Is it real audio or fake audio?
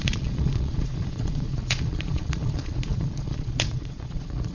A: fake